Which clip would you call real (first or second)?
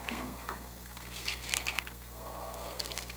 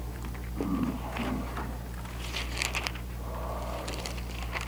second